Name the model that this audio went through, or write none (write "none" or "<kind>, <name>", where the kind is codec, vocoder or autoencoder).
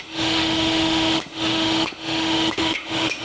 autoencoder, DAC-VAE